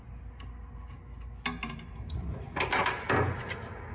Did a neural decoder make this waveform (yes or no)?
no